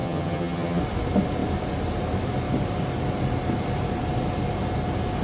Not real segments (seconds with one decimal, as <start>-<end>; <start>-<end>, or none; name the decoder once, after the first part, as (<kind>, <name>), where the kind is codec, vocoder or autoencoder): 0.0-0.8 (vocoder, HiFi-GAN)